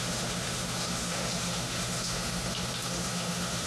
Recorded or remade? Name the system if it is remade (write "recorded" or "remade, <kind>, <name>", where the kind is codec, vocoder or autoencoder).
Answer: remade, autoencoder, DAC-VAE